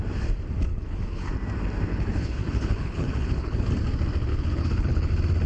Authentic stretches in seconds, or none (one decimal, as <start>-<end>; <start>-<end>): 0.0-0.7; 1.3-1.9; 3.7-4.3; 5.1-5.5